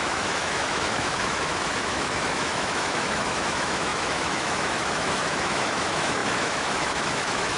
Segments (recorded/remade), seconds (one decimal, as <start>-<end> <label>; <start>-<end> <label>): 0.0-7.6 remade